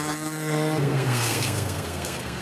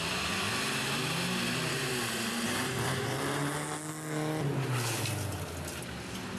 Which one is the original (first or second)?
second